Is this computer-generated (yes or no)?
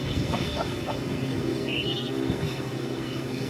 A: yes